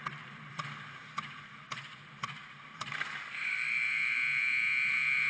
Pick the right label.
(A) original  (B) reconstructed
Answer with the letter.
B